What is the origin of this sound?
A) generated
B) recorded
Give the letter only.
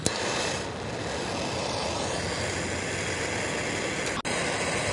B